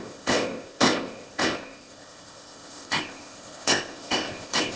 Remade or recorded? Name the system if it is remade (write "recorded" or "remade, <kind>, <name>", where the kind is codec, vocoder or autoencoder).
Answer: remade, codec, ZipCodec